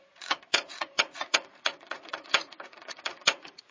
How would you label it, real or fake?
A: fake